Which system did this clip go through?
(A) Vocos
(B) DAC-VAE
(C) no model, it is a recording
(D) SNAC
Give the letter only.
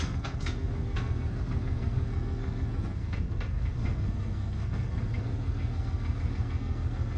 D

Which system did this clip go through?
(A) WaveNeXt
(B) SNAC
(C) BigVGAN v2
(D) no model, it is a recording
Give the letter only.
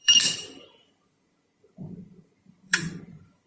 C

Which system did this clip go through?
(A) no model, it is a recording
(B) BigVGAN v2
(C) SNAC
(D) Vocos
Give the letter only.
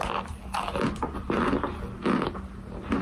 A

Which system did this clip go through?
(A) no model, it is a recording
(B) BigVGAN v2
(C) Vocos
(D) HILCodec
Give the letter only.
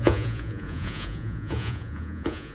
C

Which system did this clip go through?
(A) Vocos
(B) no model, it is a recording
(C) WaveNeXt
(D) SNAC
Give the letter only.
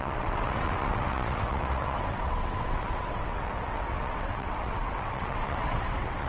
C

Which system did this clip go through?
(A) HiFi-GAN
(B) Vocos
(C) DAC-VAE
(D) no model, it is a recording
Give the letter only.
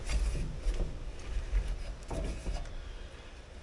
D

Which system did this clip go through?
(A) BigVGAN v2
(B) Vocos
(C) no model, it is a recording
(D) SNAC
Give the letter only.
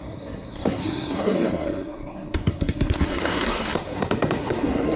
D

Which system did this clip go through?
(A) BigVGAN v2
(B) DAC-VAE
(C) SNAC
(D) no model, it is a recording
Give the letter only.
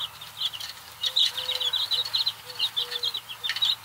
D